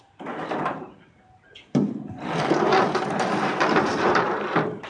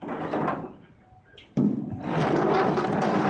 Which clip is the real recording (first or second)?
second